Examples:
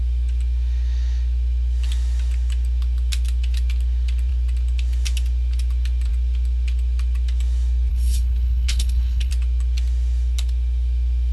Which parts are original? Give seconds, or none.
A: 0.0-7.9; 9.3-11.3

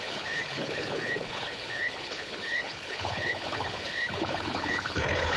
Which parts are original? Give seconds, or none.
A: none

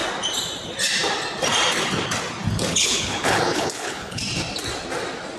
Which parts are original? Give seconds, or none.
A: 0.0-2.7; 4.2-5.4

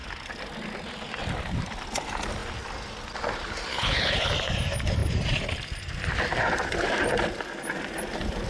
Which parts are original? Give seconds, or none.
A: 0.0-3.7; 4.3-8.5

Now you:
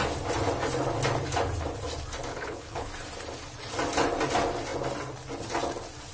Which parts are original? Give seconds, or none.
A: 0.0-2.3; 2.9-6.1

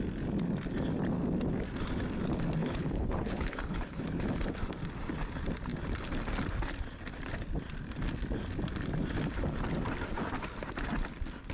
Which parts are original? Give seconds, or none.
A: 0.0-2.6; 4.0-11.5

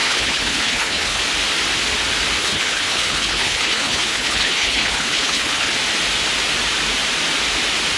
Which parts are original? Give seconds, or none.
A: 1.2-2.4; 5.7-8.0